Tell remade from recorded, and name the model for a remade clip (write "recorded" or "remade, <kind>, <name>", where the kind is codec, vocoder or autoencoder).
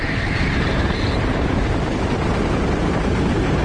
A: remade, vocoder, BigVGAN v2